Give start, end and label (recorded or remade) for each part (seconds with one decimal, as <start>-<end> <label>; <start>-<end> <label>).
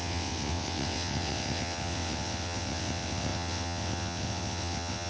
0.0-5.1 remade